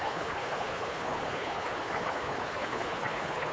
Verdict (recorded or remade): remade